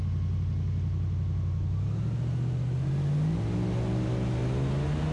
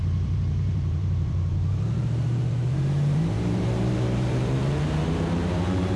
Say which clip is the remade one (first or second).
second